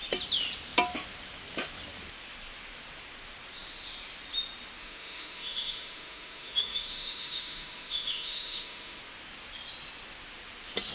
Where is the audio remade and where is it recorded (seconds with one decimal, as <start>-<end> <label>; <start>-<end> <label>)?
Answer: 0.0-4.8 recorded; 4.8-9.0 remade; 9.0-10.9 recorded